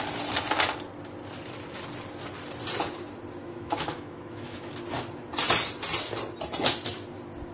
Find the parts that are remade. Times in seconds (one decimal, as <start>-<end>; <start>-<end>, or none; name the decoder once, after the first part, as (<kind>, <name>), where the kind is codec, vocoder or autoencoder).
3.4-4.7 (autoencoder, DAC-VAE)

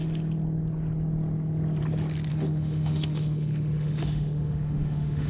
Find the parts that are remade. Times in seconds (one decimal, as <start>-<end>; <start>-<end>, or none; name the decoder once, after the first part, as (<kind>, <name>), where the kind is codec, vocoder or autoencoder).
2.3-5.3 (autoencoder, DAC-VAE)

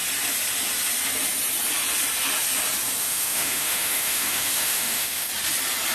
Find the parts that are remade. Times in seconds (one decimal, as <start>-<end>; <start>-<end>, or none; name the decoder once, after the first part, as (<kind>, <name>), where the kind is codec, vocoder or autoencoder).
3.0-5.3 (autoencoder, DAC-VAE)

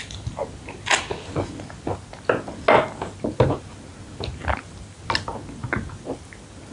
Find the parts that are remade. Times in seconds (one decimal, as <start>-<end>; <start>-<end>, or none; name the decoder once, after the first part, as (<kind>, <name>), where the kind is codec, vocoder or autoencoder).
none

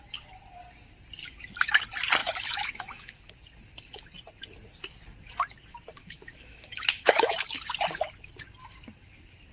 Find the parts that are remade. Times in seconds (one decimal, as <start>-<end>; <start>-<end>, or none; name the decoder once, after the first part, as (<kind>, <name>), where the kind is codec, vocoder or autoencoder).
1.2-1.7 (autoencoder, DAC-VAE); 2.2-3.3; 6.0-7.3